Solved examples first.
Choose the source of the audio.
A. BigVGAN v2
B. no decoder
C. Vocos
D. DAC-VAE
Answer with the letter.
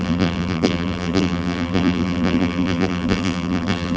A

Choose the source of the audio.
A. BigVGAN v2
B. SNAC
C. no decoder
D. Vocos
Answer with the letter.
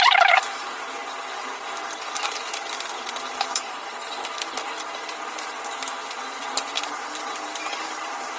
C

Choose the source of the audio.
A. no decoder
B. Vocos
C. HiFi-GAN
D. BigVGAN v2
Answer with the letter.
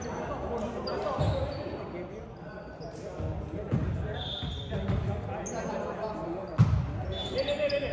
A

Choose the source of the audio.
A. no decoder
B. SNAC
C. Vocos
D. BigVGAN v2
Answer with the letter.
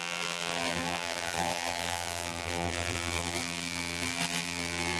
D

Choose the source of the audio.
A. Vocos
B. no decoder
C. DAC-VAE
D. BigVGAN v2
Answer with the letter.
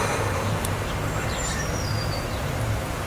D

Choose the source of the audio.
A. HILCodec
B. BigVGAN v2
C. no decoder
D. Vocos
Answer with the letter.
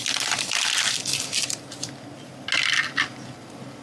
C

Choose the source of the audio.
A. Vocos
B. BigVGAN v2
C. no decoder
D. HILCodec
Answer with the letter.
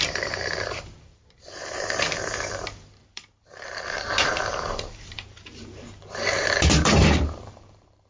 B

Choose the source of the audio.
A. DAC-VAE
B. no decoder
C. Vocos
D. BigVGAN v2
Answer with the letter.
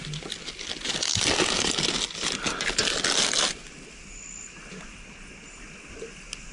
B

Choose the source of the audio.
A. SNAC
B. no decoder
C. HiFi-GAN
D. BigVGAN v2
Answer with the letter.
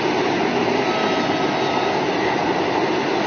B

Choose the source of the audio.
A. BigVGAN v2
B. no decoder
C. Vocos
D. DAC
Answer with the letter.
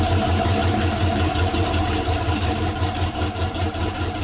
A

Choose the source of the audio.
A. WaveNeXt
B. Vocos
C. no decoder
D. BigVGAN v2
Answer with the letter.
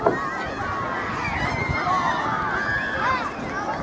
C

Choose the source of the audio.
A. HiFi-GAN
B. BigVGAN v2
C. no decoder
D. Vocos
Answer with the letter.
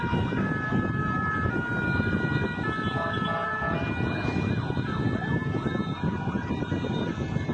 C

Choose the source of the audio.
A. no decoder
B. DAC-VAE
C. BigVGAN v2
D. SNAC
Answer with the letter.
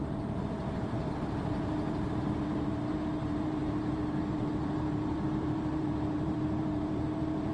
C